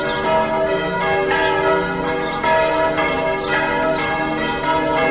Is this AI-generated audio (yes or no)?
no